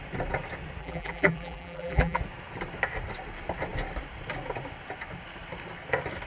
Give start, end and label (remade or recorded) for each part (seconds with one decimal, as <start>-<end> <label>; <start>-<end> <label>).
0.0-0.8 recorded; 0.8-2.2 remade; 2.2-6.3 recorded